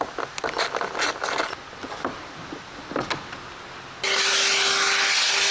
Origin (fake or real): real